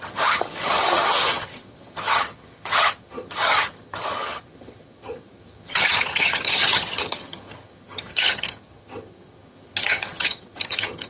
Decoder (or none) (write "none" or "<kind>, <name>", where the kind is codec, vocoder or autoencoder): vocoder, HiFi-GAN